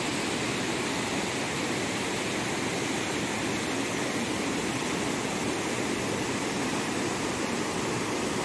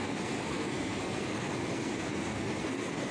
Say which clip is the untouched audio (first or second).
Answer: first